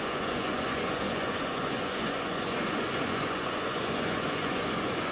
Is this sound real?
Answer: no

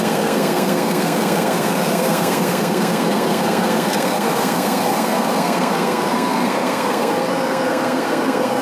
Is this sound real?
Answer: no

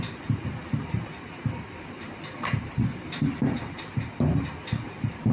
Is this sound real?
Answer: yes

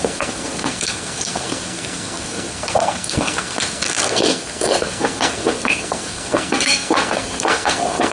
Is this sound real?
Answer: no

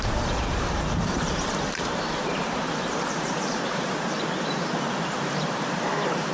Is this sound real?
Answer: no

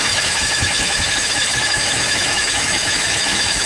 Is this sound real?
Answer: no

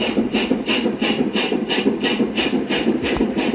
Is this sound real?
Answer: yes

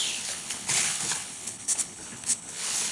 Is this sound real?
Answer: no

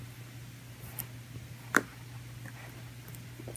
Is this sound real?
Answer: yes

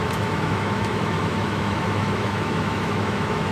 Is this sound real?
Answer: no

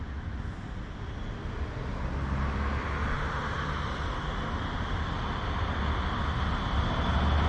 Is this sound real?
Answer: yes